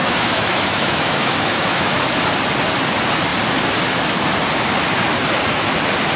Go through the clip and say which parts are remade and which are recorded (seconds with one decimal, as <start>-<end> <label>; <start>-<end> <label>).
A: 0.0-2.0 remade; 2.0-6.2 recorded